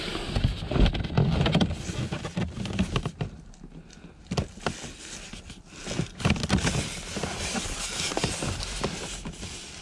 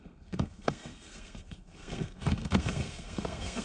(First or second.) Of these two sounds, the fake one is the second